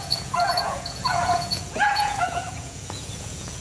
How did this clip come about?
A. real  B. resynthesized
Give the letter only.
B